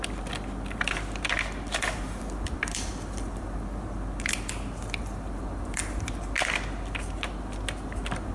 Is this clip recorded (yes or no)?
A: yes